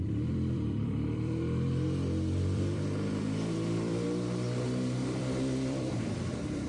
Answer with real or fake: fake